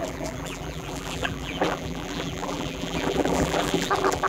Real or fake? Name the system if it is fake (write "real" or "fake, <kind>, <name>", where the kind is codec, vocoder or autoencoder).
fake, vocoder, BigVGAN v2